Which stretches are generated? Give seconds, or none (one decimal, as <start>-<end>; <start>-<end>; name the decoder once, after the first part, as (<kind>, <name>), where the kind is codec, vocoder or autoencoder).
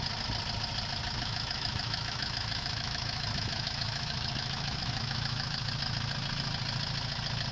1.2-5.7 (autoencoder, DAC-VAE)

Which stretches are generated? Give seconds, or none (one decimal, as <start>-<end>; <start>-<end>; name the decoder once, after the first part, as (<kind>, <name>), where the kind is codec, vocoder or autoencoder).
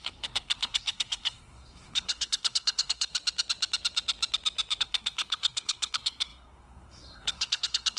0.0-3.1 (codec, SNAC); 4.8-8.0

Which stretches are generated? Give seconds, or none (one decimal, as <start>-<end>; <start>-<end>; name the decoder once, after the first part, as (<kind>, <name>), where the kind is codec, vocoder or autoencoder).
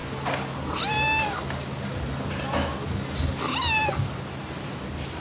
none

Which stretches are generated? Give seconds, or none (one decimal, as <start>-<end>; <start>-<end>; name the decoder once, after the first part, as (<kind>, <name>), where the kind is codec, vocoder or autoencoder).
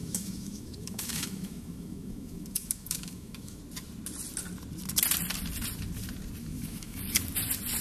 0.0-3.6 (autoencoder, DAC-VAE); 6.4-7.0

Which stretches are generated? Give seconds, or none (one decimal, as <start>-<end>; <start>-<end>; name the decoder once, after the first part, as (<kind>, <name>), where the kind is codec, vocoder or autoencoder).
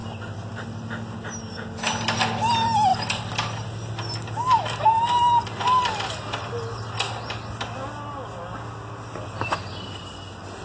none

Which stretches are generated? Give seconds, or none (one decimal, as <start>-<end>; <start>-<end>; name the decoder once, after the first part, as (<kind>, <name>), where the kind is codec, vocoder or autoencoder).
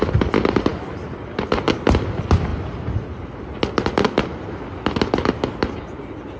none